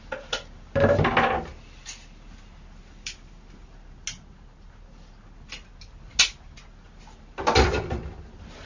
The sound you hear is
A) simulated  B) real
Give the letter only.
B